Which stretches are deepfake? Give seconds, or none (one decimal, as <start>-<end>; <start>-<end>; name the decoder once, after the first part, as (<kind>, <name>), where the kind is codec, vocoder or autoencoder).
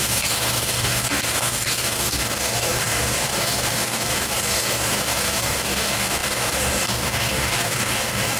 0.0-8.4 (codec, DAC)